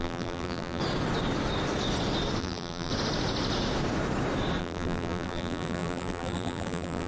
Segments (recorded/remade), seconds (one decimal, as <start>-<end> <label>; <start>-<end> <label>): 0.0-0.8 remade; 0.8-2.4 recorded; 2.4-2.9 remade; 2.9-4.6 recorded; 4.6-7.1 remade